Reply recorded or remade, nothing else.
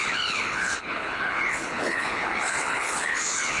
remade